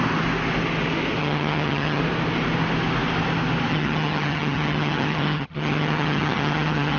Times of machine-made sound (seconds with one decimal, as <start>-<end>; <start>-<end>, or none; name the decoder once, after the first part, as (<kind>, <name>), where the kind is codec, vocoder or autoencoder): 1.2-2.0 (vocoder, HiFi-GAN); 3.7-7.0

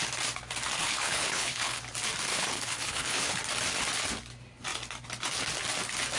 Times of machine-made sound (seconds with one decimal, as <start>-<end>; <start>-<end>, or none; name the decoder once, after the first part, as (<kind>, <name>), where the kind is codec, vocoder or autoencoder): 0.8-1.8 (codec, HILCodec); 2.3-3.4

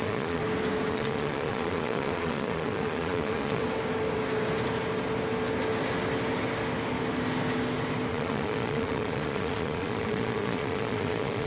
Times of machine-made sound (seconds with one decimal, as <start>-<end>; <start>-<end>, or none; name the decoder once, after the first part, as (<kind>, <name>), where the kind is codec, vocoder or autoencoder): 0.0-0.4 (vocoder, Vocos); 0.9-3.6; 8.1-11.5

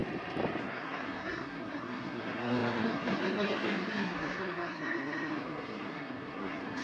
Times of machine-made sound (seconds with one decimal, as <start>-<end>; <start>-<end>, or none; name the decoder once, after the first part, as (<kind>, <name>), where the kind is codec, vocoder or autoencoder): 0.6-6.8 (codec, SNAC)

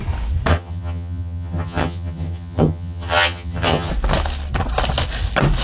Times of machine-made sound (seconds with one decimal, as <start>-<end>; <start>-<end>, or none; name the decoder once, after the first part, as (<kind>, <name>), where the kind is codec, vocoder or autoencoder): 0.5-3.9 (vocoder, HiFi-GAN)

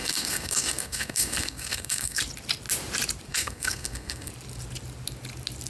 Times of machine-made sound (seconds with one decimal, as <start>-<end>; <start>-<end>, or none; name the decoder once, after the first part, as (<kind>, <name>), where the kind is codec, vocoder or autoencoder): 0.0-2.2 (codec, SNAC); 3.3-4.3